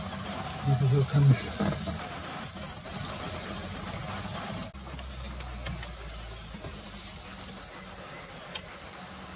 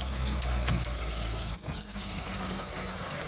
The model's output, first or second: second